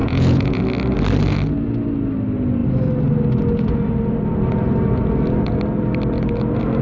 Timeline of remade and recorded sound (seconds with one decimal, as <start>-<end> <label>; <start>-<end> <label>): 0.0-0.6 remade; 0.6-6.8 recorded